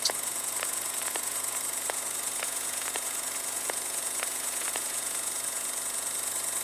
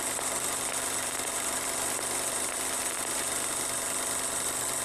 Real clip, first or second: second